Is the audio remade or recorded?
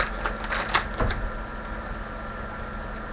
recorded